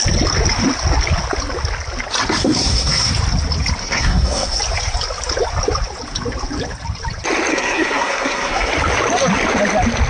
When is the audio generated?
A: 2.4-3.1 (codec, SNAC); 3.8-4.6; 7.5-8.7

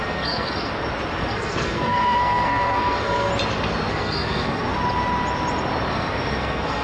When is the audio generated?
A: 0.0-0.7 (codec, SNAC); 1.2-3.3; 3.9-4.7; 5.9-6.8